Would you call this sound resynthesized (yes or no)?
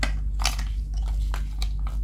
no